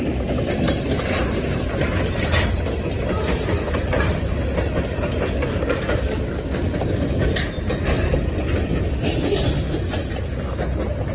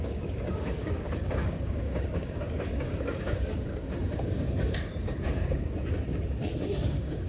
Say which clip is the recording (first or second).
first